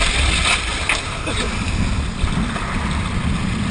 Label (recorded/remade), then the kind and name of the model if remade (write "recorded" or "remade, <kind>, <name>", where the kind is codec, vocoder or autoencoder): recorded